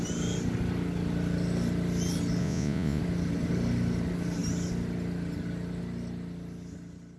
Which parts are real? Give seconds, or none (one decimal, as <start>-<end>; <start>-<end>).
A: 0.0-2.4; 3.0-7.2